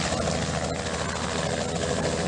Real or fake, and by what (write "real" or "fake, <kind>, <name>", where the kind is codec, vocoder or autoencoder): real